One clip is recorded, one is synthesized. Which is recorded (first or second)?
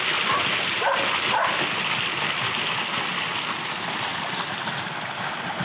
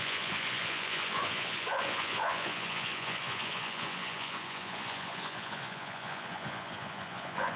first